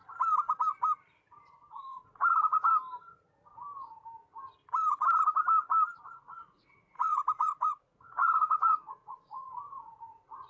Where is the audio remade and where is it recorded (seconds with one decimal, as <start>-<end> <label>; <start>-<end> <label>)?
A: 0.0-1.7 recorded; 1.7-2.7 remade; 2.7-6.1 recorded; 6.1-10.5 remade